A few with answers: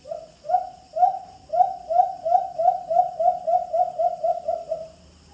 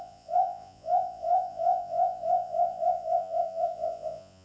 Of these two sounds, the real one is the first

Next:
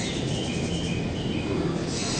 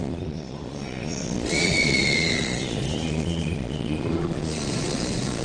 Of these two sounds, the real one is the first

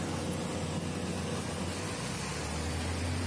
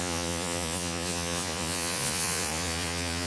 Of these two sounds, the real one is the first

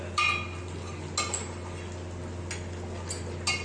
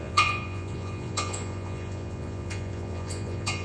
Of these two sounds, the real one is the first